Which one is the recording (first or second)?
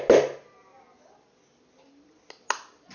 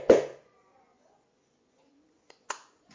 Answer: first